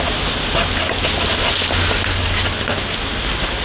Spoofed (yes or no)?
no